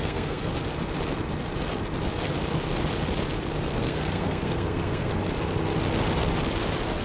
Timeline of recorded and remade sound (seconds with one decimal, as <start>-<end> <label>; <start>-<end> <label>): 0.0-0.5 remade; 0.5-3.8 recorded; 3.8-5.1 remade; 5.1-7.0 recorded